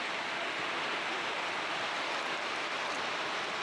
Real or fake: real